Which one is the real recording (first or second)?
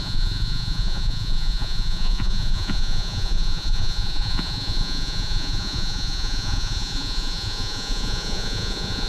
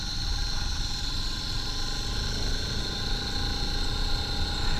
second